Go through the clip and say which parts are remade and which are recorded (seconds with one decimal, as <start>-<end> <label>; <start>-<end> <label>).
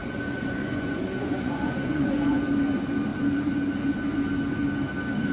0.0-2.4 remade; 2.4-5.3 recorded